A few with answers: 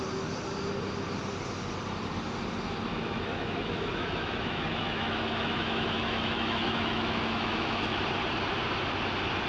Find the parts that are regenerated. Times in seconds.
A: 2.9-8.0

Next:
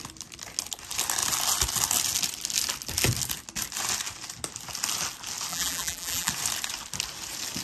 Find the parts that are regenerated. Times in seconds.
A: 5.5-6.3

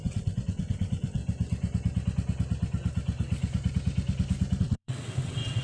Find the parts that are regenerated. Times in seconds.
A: 0.0-1.2; 4.6-5.6

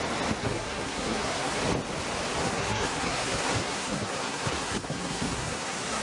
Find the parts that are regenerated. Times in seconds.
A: 0.4-1.6; 2.4-6.0

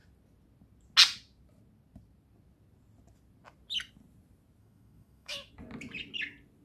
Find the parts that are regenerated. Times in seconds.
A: 4.6-5.5

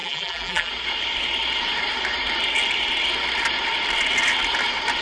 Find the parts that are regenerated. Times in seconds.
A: 0.0-0.7

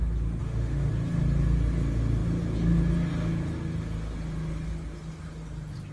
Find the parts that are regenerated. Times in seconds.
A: 0.4-0.9

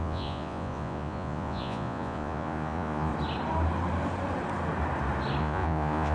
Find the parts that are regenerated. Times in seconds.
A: 0.0-3.1; 5.4-6.1